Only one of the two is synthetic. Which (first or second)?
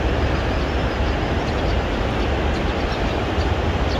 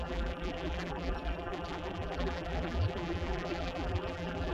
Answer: second